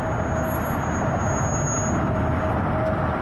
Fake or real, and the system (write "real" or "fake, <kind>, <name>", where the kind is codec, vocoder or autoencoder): real